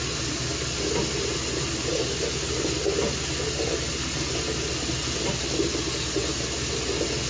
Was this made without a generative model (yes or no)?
yes